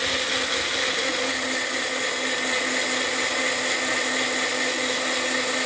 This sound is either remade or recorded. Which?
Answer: recorded